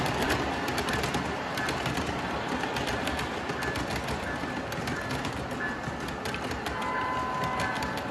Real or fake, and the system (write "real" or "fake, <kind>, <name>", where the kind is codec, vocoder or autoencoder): real